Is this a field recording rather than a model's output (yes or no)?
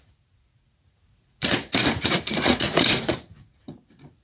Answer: no